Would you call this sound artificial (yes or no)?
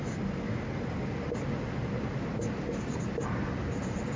no